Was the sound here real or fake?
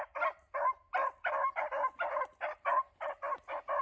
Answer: real